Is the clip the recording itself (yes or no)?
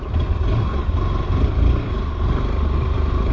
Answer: no